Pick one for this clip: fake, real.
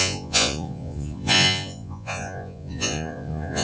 fake